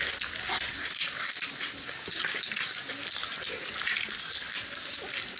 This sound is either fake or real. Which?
real